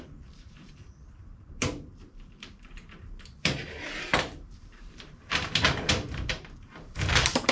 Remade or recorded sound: remade